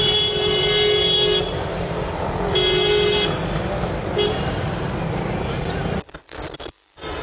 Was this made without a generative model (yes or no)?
yes